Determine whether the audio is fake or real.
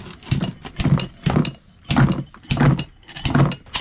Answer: real